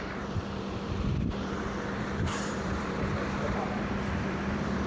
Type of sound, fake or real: fake